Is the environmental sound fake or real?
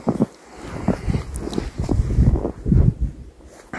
real